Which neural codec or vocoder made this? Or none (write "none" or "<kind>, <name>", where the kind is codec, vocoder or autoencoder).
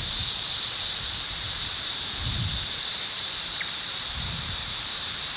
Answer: vocoder, BigVGAN v2